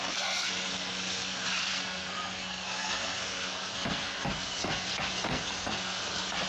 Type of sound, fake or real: fake